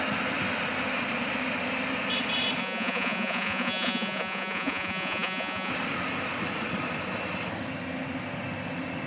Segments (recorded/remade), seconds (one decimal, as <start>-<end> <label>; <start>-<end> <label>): 0.0-2.6 recorded; 2.6-5.7 remade; 5.7-9.1 recorded